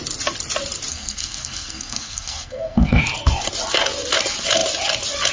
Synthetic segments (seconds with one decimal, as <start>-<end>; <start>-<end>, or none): 0.9-3.0